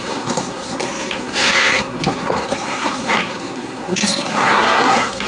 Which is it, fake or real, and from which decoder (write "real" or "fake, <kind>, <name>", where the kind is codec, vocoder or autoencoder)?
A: fake, codec, SNAC